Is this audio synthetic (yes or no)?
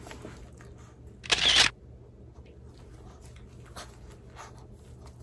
no